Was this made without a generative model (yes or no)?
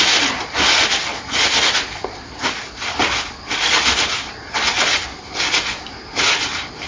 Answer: yes